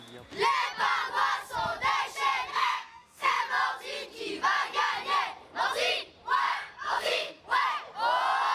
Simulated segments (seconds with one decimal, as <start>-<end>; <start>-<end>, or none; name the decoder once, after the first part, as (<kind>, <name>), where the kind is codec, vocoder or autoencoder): 2.5-3.4 (codec, SNAC); 6.4-7.4